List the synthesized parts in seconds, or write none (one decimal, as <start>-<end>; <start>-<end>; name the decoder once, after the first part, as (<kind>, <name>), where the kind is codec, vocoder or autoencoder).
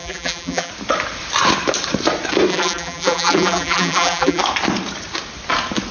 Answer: 0.0-0.7 (vocoder, BigVGAN v2); 2.5-4.4